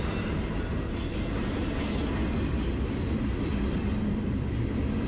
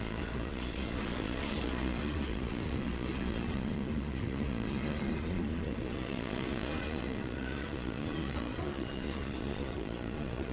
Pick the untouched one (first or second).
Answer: first